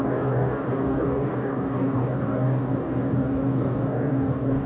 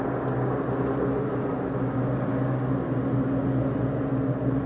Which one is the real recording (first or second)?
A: second